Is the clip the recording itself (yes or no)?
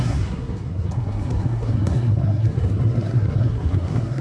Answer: no